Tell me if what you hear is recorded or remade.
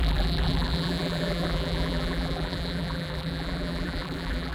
remade